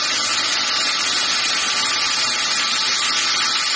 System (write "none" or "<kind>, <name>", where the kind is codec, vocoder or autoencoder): none